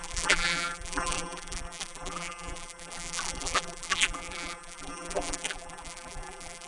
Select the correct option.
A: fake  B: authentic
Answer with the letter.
A